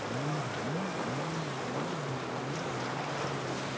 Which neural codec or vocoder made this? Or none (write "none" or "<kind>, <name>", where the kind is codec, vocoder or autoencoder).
none